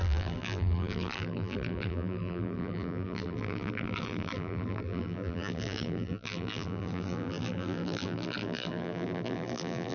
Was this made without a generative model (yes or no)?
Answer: no